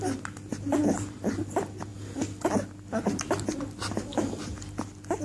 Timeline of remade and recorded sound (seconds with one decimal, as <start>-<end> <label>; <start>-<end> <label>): 0.0-5.2 recorded